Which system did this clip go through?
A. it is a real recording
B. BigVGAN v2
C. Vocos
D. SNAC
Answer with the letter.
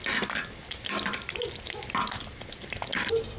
A